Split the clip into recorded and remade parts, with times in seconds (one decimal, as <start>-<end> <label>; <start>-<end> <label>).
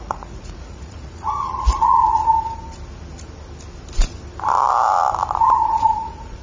0.0-2.2 remade; 2.2-5.5 recorded; 5.5-6.4 remade